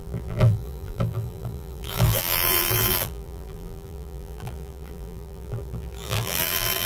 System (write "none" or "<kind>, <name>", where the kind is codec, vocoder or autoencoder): vocoder, BigVGAN v2